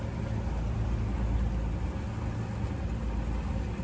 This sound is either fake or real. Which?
real